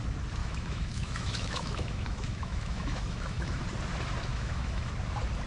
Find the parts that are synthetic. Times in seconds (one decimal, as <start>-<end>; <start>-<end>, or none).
0.4-3.6; 4.3-4.9